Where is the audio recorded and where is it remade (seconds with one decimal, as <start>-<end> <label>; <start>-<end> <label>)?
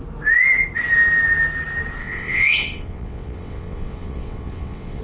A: 0.0-2.0 recorded; 2.0-5.0 remade